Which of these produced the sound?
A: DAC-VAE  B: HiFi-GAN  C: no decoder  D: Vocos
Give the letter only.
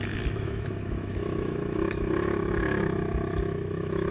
A